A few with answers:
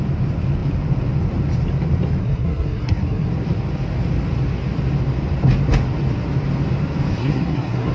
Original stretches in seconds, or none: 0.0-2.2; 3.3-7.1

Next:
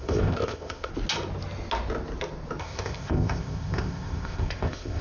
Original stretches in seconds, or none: 0.9-2.6